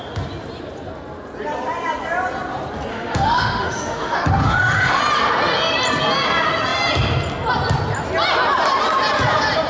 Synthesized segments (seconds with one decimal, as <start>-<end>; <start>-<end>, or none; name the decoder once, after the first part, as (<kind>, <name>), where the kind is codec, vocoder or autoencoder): 2.9-5.0 (autoencoder, DAC-VAE)